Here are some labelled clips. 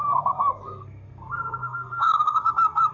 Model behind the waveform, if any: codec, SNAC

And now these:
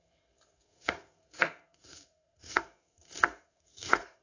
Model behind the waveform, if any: codec, SNAC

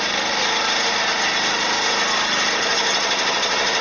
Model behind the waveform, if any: none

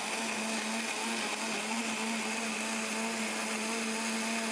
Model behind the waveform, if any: none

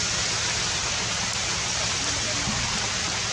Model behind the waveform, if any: none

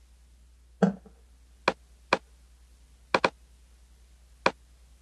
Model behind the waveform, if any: none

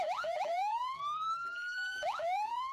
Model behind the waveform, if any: vocoder, BigVGAN v2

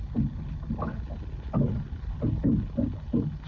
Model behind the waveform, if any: none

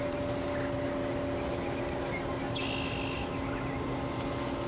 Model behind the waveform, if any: none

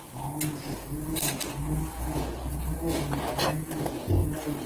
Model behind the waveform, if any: none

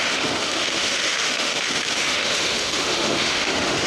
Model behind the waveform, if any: autoencoder, DAC-VAE